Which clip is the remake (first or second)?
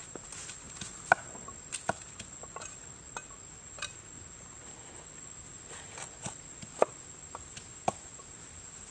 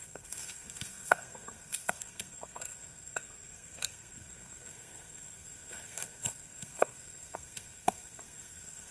second